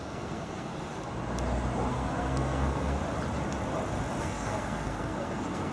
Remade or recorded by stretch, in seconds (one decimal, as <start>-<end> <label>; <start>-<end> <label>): 0.0-0.7 remade; 0.7-1.9 recorded; 1.9-3.0 remade; 3.0-4.2 recorded; 4.2-5.7 remade